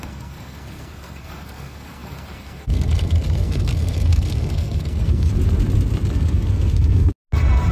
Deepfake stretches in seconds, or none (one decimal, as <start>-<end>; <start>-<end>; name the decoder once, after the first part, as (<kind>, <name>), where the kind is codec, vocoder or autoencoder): 0.0-5.3 (codec, SNAC); 6.1-7.1